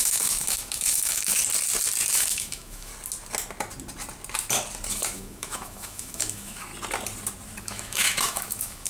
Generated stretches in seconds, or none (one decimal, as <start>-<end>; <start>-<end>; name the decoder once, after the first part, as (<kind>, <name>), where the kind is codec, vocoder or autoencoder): 0.0-1.4 (autoencoder, DAC-VAE); 2.1-2.9; 4.9-6.7; 7.6-8.9